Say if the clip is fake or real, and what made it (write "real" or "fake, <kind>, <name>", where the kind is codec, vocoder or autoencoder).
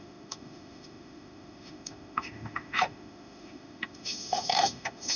fake, autoencoder, DAC-VAE